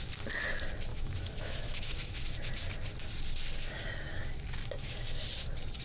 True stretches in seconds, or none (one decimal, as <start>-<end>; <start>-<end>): 0.0-0.9; 2.2-5.8